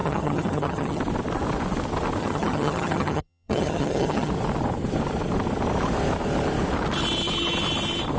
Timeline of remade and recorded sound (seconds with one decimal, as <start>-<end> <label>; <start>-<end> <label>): 0.0-1.0 remade; 1.0-2.2 recorded; 2.2-4.3 remade; 4.3-8.2 recorded